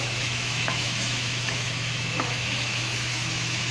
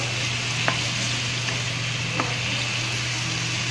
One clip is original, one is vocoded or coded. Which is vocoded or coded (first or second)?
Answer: first